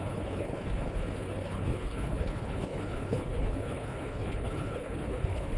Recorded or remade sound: remade